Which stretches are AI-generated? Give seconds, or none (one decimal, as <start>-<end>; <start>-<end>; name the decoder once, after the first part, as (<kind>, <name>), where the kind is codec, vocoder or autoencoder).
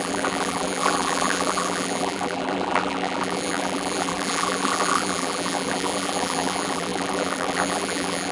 0.0-8.3 (vocoder, BigVGAN v2)